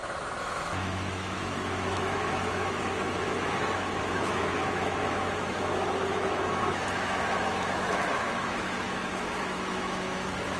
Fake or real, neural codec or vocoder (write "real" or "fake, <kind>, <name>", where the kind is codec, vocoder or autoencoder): fake, autoencoder, DAC-VAE